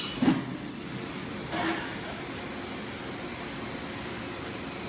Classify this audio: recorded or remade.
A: recorded